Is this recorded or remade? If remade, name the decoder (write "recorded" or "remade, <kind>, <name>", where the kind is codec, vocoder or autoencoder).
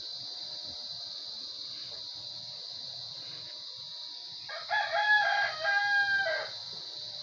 recorded